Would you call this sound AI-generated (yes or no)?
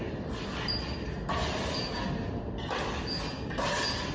no